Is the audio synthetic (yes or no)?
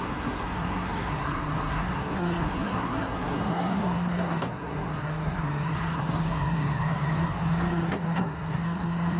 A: yes